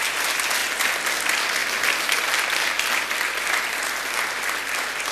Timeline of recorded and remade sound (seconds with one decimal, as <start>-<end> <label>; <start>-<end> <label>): 0.0-1.6 remade; 1.6-5.1 recorded